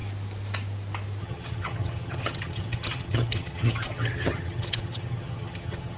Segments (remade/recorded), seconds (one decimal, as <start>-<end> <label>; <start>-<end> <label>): 0.0-1.2 recorded; 1.2-6.0 remade